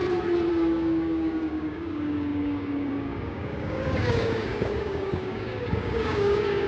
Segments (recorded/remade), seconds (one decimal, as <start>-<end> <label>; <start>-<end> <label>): 0.0-0.5 recorded; 0.5-6.7 remade